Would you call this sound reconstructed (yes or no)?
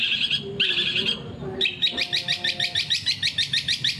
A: no